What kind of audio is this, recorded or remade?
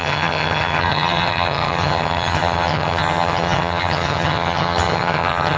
remade